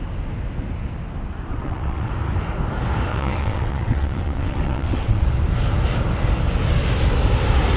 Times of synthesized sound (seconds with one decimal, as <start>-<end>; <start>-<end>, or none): 1.5-2.1; 3.1-5.2